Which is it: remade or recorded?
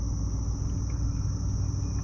recorded